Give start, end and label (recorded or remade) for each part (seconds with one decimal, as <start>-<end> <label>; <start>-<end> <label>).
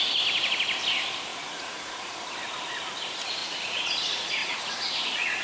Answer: 0.0-1.3 recorded; 1.3-2.2 remade; 2.2-3.4 recorded; 3.4-5.4 remade